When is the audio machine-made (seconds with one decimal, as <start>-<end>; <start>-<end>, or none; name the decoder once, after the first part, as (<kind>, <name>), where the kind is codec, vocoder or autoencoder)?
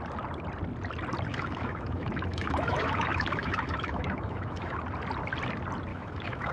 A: 1.3-4.8 (autoencoder, DAC-VAE); 5.9-6.5